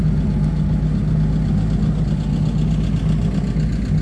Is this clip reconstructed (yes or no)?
no